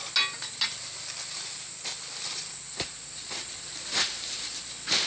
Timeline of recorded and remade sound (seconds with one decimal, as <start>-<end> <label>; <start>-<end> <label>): 0.0-3.7 recorded; 3.7-4.4 remade; 4.4-5.1 recorded